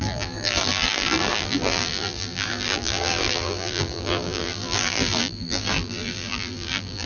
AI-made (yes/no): yes